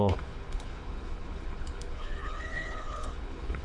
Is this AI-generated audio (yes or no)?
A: yes